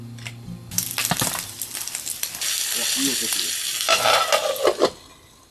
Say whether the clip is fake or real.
real